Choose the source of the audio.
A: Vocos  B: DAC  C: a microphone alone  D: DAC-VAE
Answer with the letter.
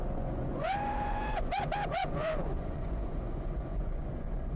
A